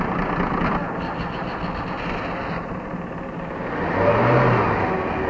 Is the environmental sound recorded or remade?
recorded